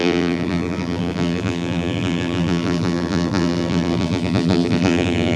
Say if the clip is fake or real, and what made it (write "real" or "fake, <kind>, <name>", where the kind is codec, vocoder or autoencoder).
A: fake, vocoder, BigVGAN v2